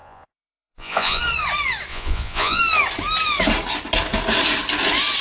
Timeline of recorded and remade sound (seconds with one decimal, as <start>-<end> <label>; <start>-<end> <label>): 0.0-1.2 remade; 1.2-1.9 recorded; 1.9-2.6 remade; 2.6-5.2 recorded